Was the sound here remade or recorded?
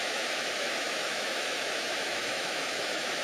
remade